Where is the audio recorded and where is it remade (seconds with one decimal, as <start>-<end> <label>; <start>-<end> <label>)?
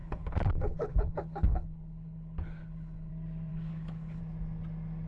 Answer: 0.0-3.1 remade; 3.1-3.5 recorded; 3.5-4.2 remade; 4.2-5.1 recorded